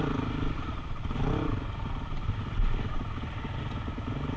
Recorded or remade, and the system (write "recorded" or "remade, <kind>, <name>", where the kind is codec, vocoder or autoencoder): recorded